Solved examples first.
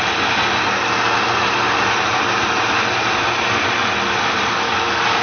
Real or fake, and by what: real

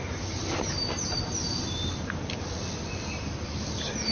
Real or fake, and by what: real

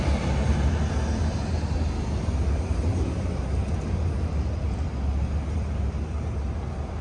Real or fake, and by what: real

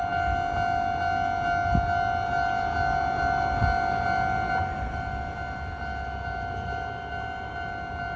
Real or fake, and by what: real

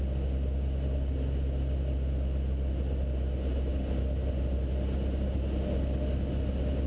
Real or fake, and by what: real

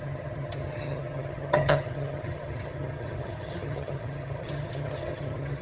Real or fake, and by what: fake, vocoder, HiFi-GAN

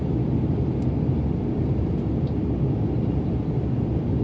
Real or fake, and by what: real